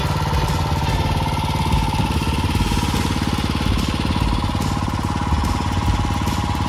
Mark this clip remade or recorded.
recorded